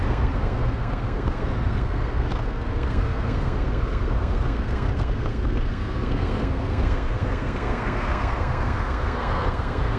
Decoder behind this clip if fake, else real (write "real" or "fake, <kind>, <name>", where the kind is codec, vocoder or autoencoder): fake, codec, SNAC